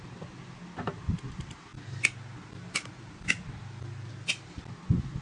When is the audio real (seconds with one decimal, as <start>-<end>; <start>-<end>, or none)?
0.0-5.2